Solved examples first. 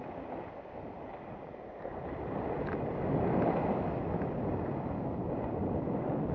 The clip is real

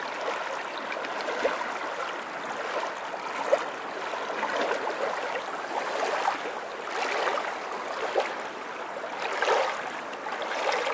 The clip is real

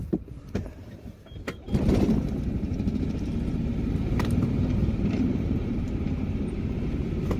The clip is fake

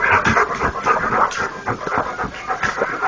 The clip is real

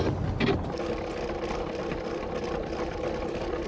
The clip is real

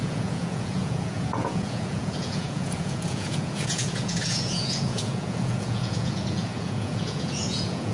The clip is fake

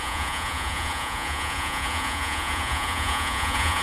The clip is fake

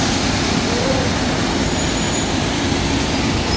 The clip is real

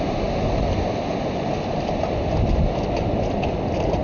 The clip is real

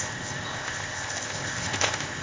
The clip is fake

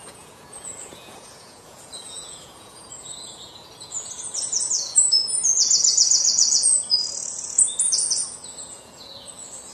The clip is fake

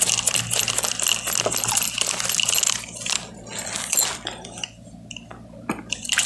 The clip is real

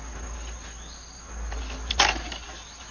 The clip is real